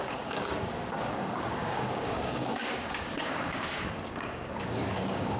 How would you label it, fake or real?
fake